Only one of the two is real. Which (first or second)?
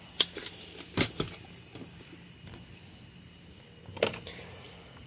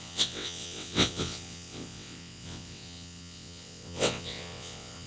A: first